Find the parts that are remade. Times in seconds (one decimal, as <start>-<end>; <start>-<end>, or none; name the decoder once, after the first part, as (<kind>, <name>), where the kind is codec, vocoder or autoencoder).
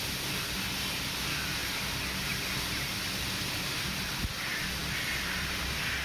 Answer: none